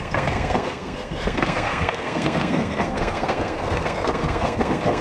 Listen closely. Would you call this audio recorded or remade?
remade